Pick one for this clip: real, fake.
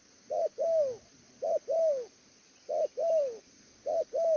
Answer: real